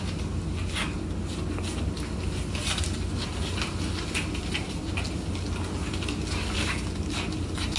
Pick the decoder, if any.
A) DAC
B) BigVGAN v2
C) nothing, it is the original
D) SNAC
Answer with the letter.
C